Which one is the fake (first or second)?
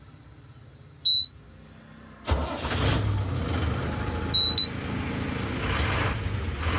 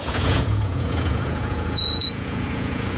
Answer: second